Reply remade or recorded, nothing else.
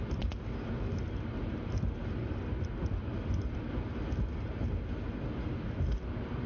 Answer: recorded